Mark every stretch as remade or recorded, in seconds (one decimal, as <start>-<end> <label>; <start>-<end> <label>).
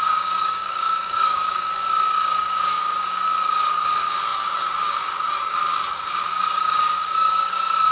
0.0-7.9 remade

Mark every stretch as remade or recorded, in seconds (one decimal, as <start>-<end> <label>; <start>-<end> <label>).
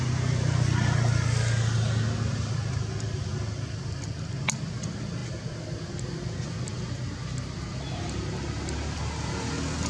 0.0-9.9 recorded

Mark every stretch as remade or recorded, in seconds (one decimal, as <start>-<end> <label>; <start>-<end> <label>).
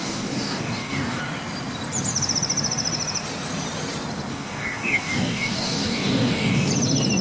0.0-1.2 remade; 1.2-4.3 recorded; 4.3-6.7 remade; 6.7-7.2 recorded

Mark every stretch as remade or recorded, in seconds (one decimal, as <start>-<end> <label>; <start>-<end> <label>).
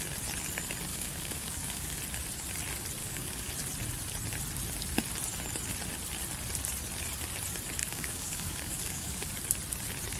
0.0-0.9 recorded; 0.9-2.0 remade; 2.0-3.0 recorded; 3.0-3.5 remade; 3.5-7.8 recorded; 7.8-9.3 remade; 9.3-10.2 recorded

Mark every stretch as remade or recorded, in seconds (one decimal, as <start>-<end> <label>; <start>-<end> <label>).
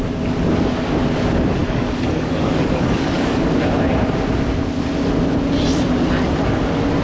0.0-1.6 recorded; 1.6-3.5 remade; 3.5-7.0 recorded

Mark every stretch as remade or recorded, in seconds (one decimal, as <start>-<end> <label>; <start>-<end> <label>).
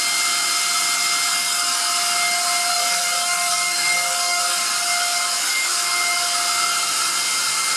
0.0-1.3 recorded; 1.3-1.9 remade; 1.9-2.7 recorded; 2.7-4.6 remade; 4.6-5.4 recorded; 5.4-5.9 remade; 5.9-7.8 recorded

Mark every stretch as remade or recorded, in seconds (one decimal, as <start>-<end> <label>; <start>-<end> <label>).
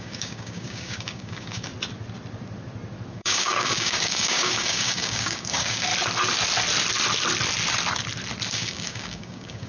0.0-1.7 remade; 1.7-3.1 recorded; 3.1-5.9 remade; 5.9-8.5 recorded; 8.5-9.7 remade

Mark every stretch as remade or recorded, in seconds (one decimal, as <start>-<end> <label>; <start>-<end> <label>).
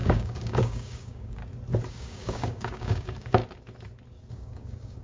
0.0-1.4 remade; 1.4-1.9 recorded; 1.9-3.4 remade; 3.4-4.3 recorded; 4.3-5.0 remade